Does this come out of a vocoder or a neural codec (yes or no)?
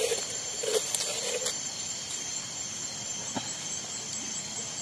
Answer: no